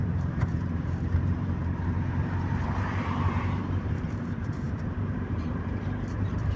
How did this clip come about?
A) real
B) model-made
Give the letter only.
B